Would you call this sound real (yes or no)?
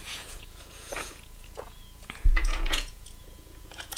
no